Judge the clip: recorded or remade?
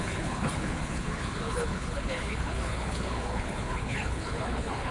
remade